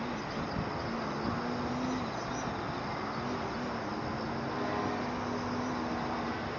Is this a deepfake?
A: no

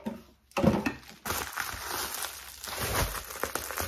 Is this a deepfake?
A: no